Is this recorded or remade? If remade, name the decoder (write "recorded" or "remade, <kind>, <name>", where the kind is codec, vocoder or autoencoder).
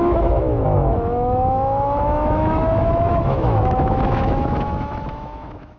remade, autoencoder, DAC-VAE